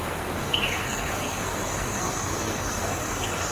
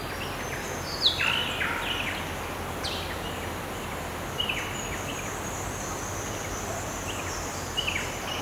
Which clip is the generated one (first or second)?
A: first